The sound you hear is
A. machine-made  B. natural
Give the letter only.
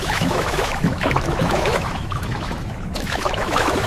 A